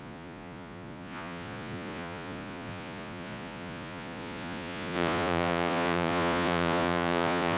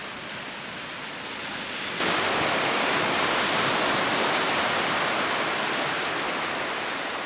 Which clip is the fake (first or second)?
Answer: first